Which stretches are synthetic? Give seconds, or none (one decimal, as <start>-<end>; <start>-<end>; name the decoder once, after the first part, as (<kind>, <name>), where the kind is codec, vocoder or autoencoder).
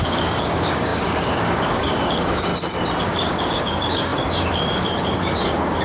0.0-2.5 (codec, DAC); 3.0-5.8